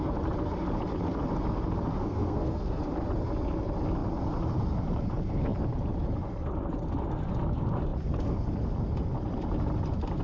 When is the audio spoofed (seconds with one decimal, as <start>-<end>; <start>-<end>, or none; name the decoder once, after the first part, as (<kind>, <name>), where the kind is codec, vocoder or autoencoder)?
1.9-2.8 (codec, SNAC)